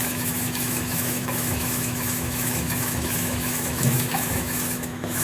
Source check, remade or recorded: remade